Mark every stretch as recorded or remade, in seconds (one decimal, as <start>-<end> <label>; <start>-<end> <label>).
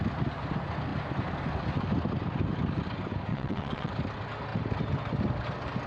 0.0-3.3 recorded; 3.3-3.9 remade; 3.9-5.9 recorded